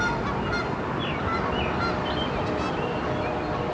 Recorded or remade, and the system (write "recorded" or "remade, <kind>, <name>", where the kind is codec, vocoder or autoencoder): recorded